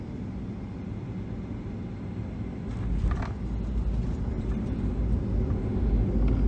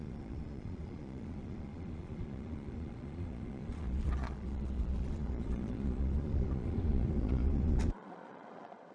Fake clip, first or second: second